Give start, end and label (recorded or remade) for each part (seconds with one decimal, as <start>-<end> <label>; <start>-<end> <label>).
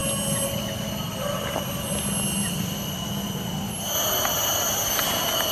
0.0-5.5 recorded